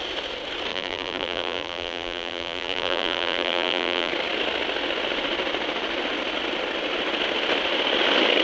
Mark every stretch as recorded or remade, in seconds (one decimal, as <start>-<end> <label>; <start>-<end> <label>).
0.0-0.7 recorded; 0.7-4.1 remade; 4.1-8.4 recorded